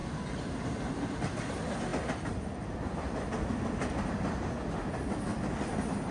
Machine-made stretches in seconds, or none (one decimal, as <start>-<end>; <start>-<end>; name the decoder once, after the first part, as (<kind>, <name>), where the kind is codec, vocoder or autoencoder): none